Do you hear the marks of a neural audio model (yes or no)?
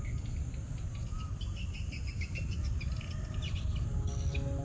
no